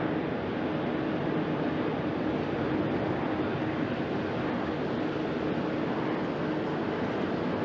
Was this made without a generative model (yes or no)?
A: yes